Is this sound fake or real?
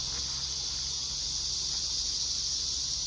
real